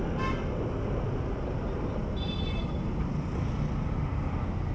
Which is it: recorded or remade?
recorded